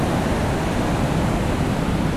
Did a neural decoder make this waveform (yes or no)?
no